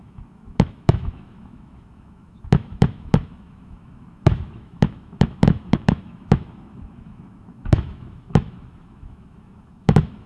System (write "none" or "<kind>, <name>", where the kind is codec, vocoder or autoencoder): autoencoder, DAC-VAE